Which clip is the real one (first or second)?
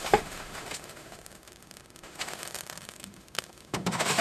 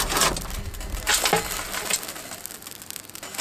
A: second